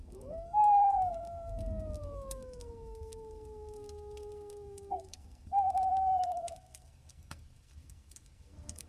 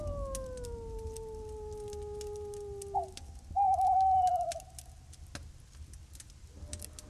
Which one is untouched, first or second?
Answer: second